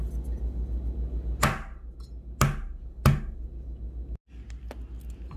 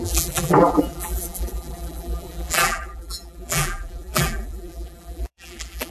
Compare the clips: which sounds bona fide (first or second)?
first